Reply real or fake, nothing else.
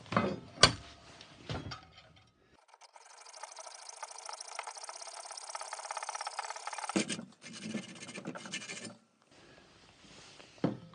real